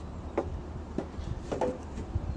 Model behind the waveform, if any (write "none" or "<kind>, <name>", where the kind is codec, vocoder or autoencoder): vocoder, BigVGAN v2